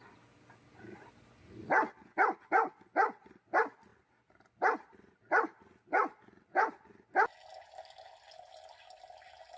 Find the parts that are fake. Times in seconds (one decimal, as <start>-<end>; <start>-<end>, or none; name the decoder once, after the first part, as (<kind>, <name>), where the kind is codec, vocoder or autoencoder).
none